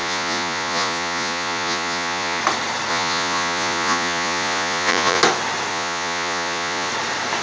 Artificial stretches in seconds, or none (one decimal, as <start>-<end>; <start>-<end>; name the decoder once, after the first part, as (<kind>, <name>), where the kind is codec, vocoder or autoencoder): 0.0-2.4 (vocoder, Vocos); 2.9-5.2; 5.7-6.9